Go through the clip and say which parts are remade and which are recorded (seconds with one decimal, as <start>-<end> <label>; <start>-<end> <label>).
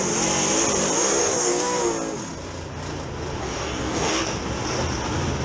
0.0-1.2 recorded; 1.2-1.8 remade; 1.8-3.4 recorded; 3.4-4.2 remade; 4.2-5.4 recorded